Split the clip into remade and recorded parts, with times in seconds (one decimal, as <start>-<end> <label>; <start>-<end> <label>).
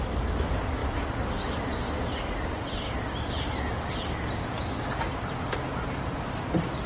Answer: 0.0-6.9 recorded